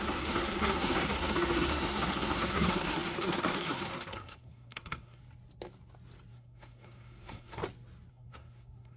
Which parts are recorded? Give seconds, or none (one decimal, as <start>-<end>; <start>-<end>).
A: 5.2-6.3; 7.6-8.1